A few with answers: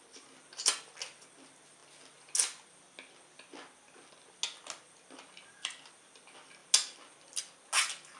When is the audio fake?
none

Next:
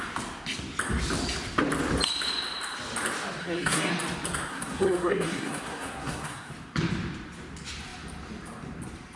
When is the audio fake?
3.4-3.9; 4.5-6.5

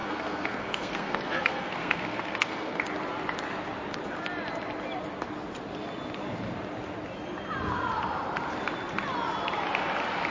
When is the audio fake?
0.0-2.8

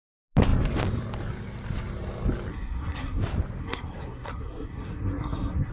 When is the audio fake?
2.5-3.2; 3.6-5.7

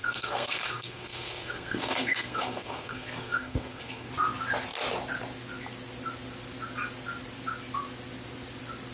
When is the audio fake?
0.0-4.1

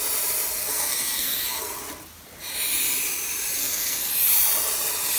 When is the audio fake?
0.6-1.8; 3.6-4.1